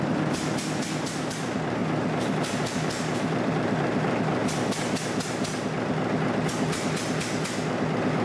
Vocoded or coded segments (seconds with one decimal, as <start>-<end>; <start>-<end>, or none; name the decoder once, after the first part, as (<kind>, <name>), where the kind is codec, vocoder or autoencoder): 0.0-4.4 (vocoder, BigVGAN v2)